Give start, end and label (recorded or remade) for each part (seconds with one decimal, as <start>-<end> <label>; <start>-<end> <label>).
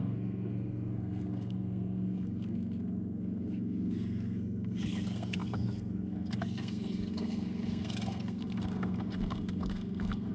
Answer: 0.0-10.3 remade